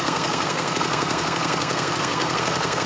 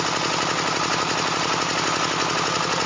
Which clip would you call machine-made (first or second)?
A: first